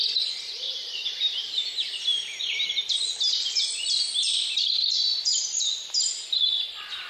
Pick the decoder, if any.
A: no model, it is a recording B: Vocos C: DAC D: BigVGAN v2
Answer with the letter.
D